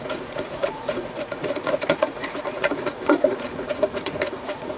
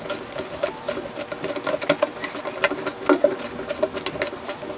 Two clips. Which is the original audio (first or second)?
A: second